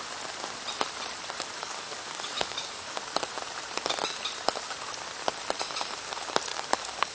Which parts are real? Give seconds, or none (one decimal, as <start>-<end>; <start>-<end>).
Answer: 0.0-1.6; 3.0-6.5